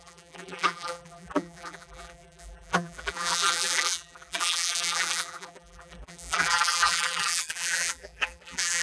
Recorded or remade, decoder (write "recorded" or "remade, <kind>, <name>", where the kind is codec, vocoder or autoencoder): remade, vocoder, BigVGAN v2